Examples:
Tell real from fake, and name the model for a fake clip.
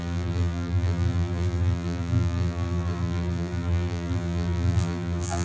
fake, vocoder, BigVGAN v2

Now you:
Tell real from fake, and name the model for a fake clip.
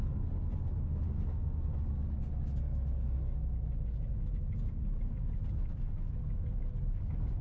real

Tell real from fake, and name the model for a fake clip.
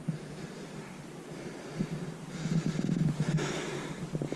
real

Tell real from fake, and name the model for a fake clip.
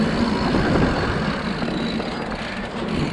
real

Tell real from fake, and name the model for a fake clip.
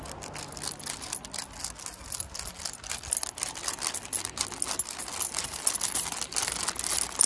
real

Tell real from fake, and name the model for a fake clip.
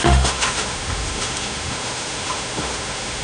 fake, autoencoder, DAC-VAE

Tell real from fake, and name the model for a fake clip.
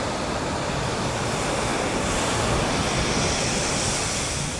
real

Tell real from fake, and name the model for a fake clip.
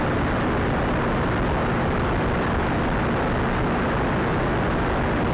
real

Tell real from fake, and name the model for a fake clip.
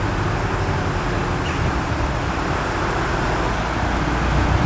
real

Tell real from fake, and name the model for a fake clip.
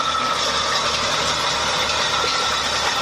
real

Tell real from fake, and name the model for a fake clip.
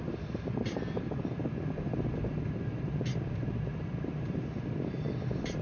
real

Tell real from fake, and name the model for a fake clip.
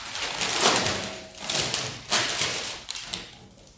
real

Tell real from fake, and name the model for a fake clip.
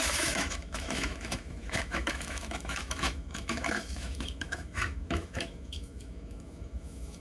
fake, autoencoder, DAC-VAE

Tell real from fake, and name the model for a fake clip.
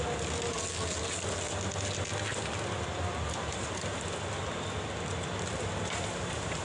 real